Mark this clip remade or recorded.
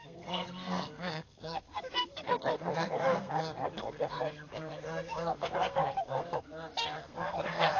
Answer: remade